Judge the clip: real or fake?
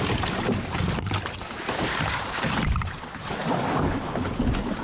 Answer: fake